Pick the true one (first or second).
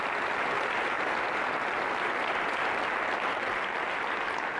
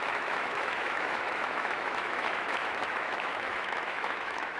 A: first